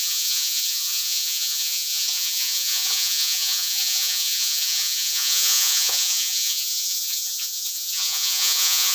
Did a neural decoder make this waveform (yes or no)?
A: yes